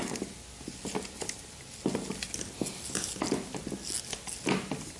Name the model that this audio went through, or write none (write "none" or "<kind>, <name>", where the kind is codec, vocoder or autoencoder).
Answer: none